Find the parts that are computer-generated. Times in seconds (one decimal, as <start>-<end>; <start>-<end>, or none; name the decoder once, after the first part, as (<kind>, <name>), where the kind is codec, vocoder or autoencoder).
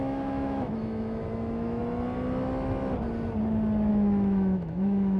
0.0-1.8 (autoencoder, DAC-VAE); 3.9-5.2